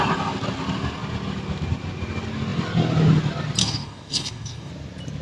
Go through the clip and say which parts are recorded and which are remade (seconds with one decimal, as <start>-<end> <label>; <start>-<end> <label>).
0.0-3.6 recorded; 3.6-4.7 remade; 4.7-5.2 recorded